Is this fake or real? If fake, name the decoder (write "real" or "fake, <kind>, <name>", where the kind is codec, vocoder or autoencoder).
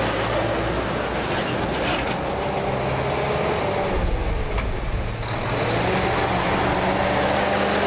real